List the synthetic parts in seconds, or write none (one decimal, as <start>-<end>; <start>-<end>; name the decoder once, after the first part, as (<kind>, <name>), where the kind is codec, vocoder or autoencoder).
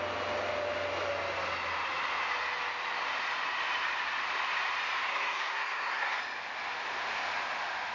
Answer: 5.1-6.2 (codec, SNAC)